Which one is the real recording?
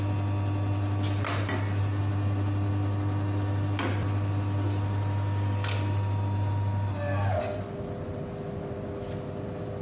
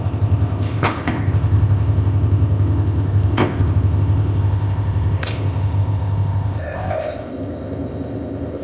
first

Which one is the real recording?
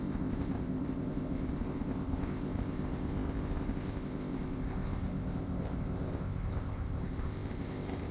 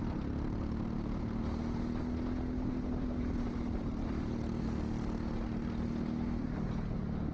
second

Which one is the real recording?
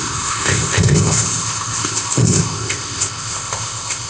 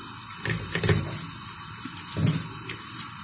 second